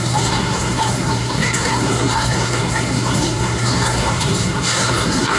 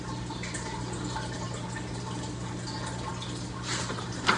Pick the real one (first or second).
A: second